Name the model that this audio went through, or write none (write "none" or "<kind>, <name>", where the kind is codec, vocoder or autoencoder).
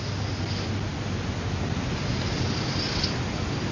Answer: none